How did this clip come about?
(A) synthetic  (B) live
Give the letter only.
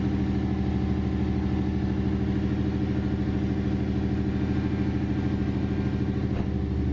B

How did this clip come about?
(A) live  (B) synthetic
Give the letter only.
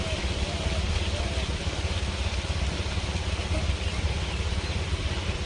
A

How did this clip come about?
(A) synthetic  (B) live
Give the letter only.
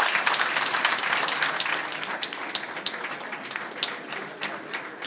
B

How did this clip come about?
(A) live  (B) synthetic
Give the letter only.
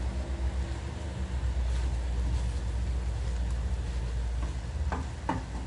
A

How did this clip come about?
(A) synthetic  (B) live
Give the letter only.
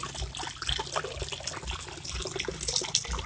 B